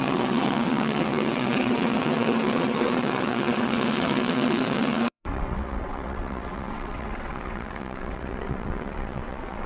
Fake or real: fake